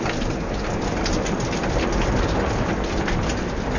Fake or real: real